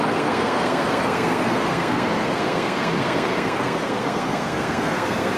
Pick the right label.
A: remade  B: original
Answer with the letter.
A